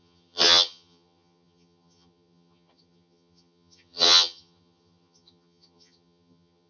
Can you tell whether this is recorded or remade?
remade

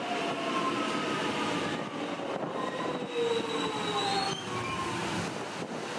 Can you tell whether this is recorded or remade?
recorded